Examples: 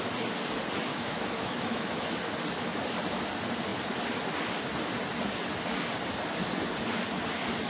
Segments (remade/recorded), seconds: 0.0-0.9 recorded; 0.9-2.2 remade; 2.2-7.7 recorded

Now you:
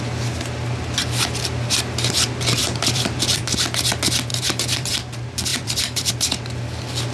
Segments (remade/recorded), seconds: 0.0-2.6 recorded; 2.6-3.4 remade; 3.4-4.3 recorded; 4.3-4.9 remade; 4.9-5.5 recorded; 5.5-6.1 remade; 6.1-7.1 recorded

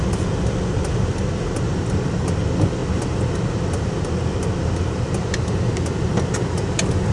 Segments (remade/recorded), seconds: 0.0-7.1 recorded

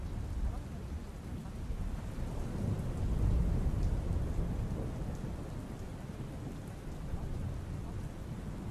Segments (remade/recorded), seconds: 0.0-8.7 recorded

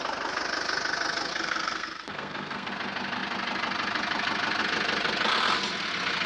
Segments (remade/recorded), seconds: 0.0-1.3 recorded; 1.3-2.7 remade; 2.7-6.3 recorded

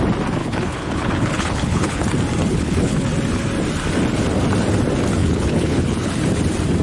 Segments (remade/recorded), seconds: 0.0-0.4 recorded; 0.4-2.0 remade; 2.0-2.5 recorded; 2.5-3.1 remade; 3.1-5.2 recorded; 5.2-6.1 remade; 6.1-6.8 recorded